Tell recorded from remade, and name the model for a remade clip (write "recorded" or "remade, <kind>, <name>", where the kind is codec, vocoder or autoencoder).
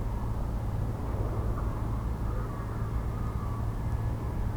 recorded